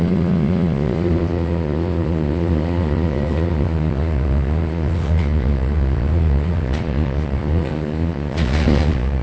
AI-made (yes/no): yes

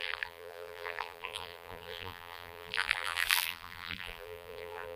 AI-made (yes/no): yes